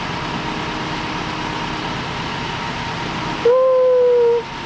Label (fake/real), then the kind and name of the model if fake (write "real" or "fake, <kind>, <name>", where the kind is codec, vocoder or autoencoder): real